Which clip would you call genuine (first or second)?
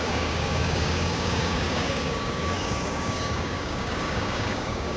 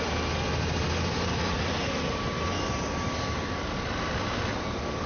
second